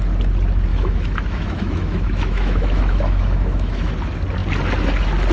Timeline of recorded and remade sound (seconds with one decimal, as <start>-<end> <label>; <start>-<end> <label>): 0.0-0.7 recorded; 0.7-3.9 remade; 3.9-5.3 recorded